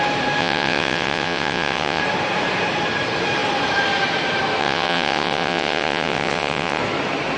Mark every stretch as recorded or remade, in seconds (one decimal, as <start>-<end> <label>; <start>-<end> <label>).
0.0-0.4 recorded; 0.4-2.0 remade; 2.0-4.6 recorded; 4.6-6.8 remade; 6.8-7.4 recorded